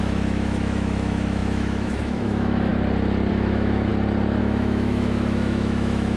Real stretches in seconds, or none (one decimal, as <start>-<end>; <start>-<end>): 2.7-3.3; 3.9-4.4